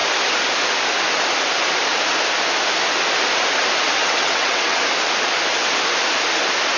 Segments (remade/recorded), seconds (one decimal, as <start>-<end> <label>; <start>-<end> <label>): 0.0-4.0 recorded; 4.0-4.8 remade; 4.8-6.8 recorded